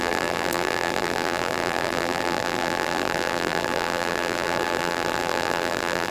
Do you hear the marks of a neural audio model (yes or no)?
yes